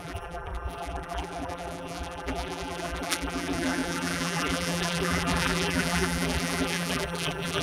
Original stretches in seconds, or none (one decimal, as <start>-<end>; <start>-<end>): none